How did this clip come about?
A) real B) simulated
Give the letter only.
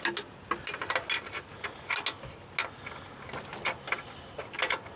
A